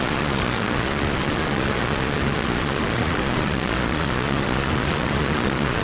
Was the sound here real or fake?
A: fake